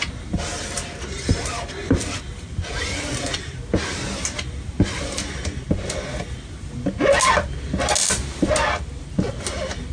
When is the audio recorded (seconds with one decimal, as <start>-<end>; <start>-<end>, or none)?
0.0-9.9